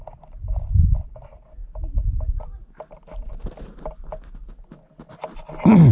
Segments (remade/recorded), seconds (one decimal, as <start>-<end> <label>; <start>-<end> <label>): 0.0-5.9 recorded